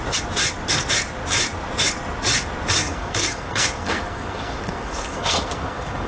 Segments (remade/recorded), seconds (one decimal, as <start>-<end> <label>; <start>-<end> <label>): 0.0-2.8 recorded; 2.8-6.1 remade